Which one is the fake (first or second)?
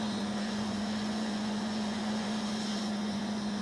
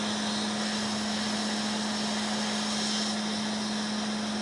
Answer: first